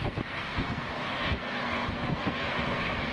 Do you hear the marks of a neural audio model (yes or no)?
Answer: yes